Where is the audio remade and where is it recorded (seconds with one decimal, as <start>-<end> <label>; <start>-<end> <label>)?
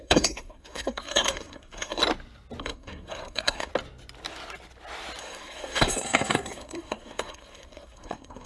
0.0-2.0 remade; 2.0-2.6 recorded; 2.6-3.7 remade; 3.7-5.2 recorded; 5.2-8.5 remade